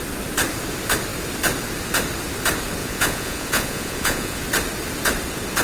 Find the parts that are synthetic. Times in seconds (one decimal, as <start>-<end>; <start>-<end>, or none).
2.8-4.4